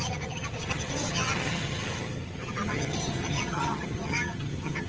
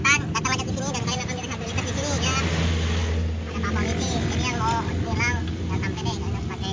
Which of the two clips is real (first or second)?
second